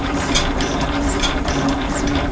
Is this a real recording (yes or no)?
no